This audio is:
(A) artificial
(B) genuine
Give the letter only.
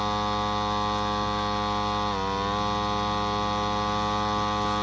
B